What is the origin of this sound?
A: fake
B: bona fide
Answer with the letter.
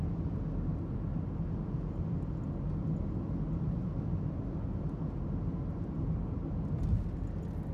B